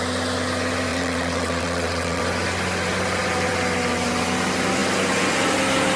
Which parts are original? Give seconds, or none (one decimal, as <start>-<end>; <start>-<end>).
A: 0.0-0.9; 2.2-6.0